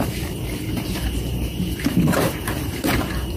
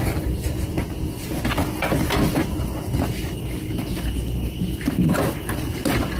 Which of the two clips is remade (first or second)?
first